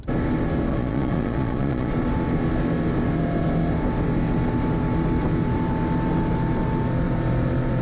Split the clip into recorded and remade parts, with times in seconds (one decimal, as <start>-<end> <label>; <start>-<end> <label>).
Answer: 0.0-0.7 recorded; 0.7-1.9 remade; 1.9-7.8 recorded